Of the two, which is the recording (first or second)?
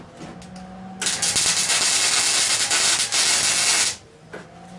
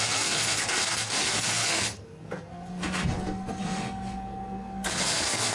first